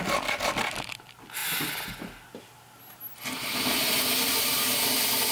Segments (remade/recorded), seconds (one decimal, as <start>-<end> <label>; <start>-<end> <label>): 0.0-5.3 recorded